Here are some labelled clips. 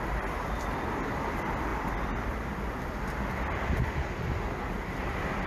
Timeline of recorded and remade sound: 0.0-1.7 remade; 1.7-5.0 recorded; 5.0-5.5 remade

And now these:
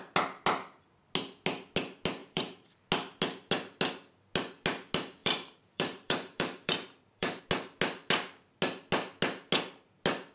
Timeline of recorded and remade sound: 0.0-2.2 recorded; 2.2-2.8 remade; 2.8-5.2 recorded; 5.2-7.4 remade; 7.4-10.3 recorded